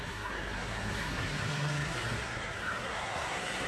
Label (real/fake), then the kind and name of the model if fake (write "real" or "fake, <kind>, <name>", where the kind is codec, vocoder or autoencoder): fake, codec, SNAC